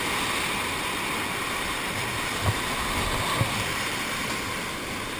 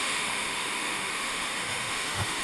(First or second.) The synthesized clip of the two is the second